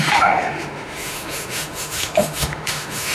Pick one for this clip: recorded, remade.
remade